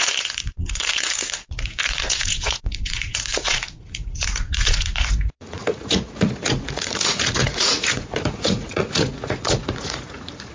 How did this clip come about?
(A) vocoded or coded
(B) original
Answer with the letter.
A